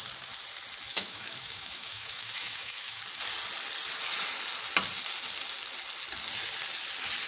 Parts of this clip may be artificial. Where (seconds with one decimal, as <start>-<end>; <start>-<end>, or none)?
0.9-3.0